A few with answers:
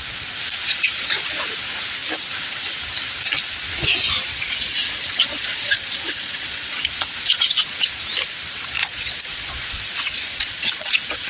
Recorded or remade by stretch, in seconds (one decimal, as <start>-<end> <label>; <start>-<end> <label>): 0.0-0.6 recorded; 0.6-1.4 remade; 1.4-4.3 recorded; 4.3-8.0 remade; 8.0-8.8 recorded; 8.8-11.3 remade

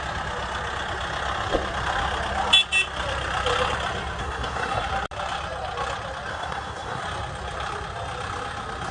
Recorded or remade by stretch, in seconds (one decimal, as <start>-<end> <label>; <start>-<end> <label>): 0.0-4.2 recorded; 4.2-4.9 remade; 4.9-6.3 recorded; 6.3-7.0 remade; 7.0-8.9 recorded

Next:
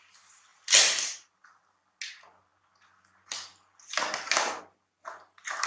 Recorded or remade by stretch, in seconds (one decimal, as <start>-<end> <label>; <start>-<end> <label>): 0.0-5.7 recorded

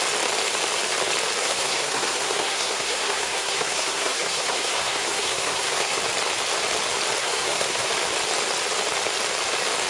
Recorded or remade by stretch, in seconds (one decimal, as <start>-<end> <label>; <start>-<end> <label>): 0.0-1.4 recorded; 1.4-6.0 remade; 6.0-7.2 recorded; 7.2-7.9 remade; 7.9-9.9 recorded

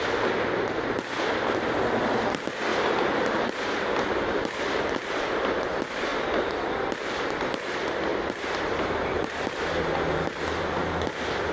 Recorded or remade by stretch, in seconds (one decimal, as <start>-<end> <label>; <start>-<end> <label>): 0.0-2.7 recorded; 2.7-3.5 remade; 3.5-8.1 recorded; 8.1-10.9 remade; 10.9-11.5 recorded